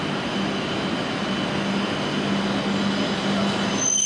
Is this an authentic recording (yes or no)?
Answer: yes